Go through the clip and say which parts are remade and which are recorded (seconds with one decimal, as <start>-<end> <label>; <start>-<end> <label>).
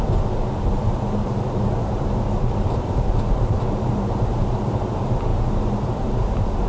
0.0-0.7 recorded; 0.7-4.7 remade; 4.7-5.3 recorded; 5.3-6.2 remade; 6.2-6.7 recorded